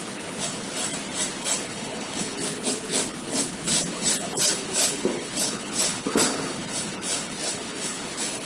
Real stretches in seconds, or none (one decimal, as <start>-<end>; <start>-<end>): 0.9-1.4